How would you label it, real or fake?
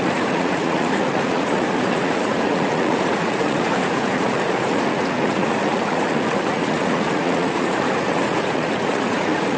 fake